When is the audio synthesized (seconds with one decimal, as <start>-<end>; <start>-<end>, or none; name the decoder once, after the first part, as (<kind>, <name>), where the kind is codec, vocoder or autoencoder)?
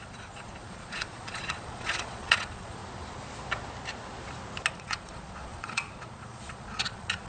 0.0-2.8 (vocoder, Vocos); 4.7-7.3